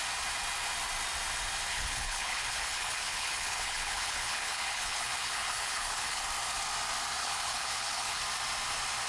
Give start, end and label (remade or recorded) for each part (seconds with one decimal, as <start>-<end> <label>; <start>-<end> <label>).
0.0-1.7 recorded; 1.7-6.2 remade; 6.2-7.2 recorded; 7.2-8.2 remade; 8.2-9.1 recorded